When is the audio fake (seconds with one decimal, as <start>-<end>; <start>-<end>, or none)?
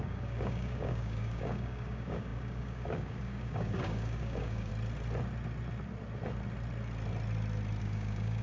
0.0-4.7; 7.8-8.4